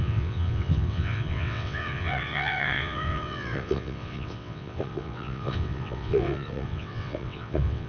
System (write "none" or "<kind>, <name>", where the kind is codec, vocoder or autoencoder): vocoder, WaveNeXt